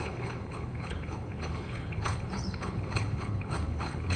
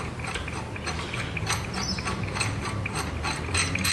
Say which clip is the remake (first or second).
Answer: first